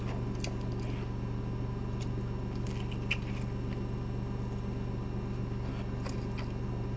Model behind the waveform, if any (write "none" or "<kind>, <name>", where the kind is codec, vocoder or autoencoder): none